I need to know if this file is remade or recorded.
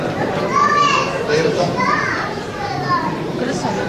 remade